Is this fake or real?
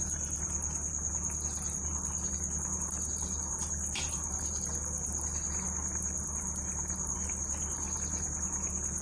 real